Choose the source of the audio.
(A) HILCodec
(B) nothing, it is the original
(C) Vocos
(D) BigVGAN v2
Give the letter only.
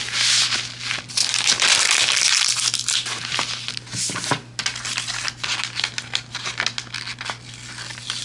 B